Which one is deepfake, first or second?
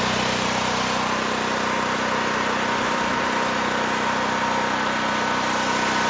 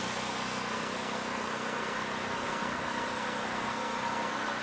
second